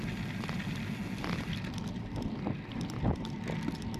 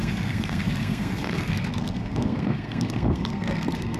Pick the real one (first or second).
first